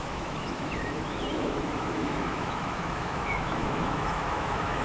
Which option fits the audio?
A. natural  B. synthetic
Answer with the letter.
B